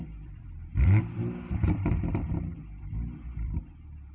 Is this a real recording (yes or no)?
no